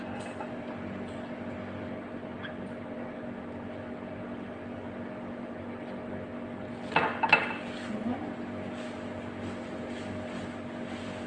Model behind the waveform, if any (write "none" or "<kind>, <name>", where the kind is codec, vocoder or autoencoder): none